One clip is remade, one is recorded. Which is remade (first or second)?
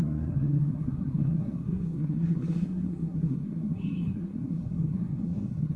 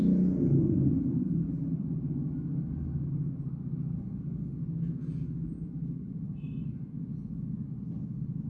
first